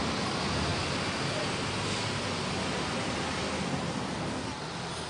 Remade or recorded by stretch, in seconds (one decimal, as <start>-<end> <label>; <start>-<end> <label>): 0.0-5.1 recorded

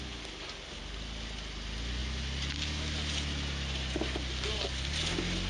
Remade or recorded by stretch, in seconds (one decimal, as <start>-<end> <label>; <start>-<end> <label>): 0.0-5.5 recorded

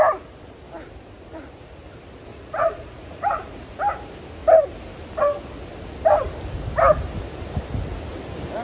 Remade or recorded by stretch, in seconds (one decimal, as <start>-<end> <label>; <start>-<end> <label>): 0.0-2.3 recorded; 2.3-3.7 remade; 3.7-8.6 recorded

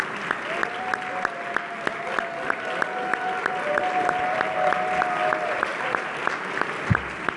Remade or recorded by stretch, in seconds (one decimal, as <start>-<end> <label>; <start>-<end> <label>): 0.0-7.4 recorded

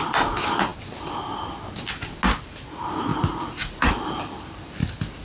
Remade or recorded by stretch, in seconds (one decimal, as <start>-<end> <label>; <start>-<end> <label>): 0.0-3.1 recorded; 3.1-3.9 remade; 3.9-5.2 recorded

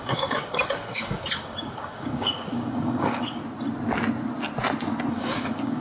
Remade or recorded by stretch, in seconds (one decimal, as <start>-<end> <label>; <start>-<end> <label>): 0.0-3.4 remade; 3.4-5.1 recorded; 5.1-5.8 remade

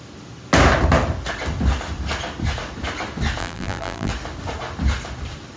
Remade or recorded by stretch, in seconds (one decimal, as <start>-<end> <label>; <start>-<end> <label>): 0.0-3.4 recorded; 3.4-4.1 remade; 4.1-5.6 recorded

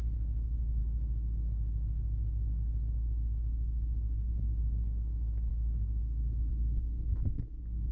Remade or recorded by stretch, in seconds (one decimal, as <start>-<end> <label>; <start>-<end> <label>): 0.0-0.8 remade; 0.8-4.3 recorded; 4.3-7.9 remade